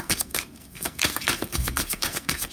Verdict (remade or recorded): remade